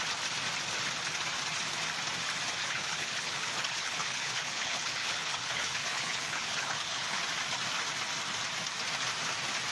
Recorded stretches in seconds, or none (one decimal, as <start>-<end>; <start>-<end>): 0.0-2.6; 7.2-9.7